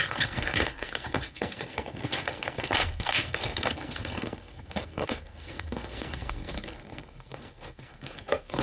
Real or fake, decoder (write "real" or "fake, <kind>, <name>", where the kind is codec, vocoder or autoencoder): fake, codec, SNAC